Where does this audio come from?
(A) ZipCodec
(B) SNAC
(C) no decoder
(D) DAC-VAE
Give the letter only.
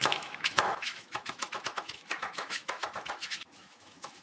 D